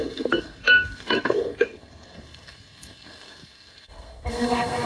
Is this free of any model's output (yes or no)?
no